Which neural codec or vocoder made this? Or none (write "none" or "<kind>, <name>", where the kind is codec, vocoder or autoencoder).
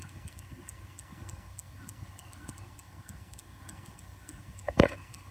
codec, SNAC